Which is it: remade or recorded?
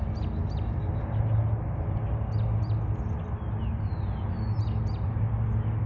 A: recorded